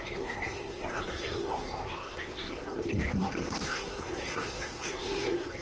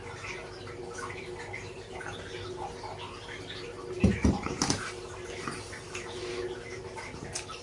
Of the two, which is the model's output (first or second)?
first